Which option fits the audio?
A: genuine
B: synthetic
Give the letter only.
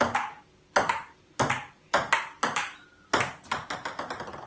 A